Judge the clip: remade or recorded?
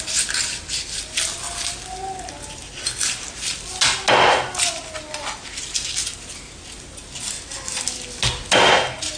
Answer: recorded